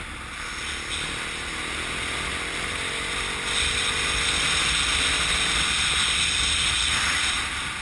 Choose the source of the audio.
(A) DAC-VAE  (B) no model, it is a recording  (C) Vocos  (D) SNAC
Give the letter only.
B